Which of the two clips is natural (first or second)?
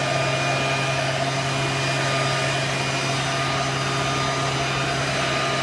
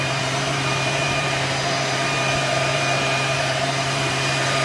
first